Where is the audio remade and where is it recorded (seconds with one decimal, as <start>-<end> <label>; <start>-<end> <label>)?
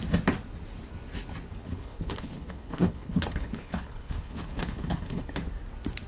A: 0.0-1.6 recorded; 1.6-5.2 remade; 5.2-6.1 recorded